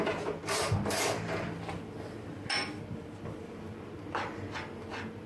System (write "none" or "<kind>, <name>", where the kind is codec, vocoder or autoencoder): none